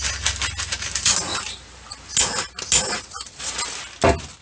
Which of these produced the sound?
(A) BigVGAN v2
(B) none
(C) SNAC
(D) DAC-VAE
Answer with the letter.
B